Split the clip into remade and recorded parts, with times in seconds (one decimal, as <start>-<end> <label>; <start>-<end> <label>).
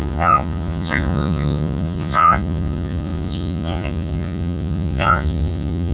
0.0-5.9 remade